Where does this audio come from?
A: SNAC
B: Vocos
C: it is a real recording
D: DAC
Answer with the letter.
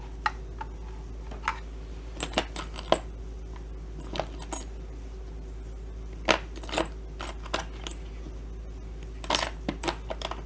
C